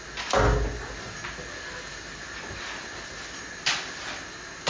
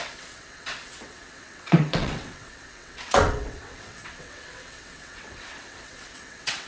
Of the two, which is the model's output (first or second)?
second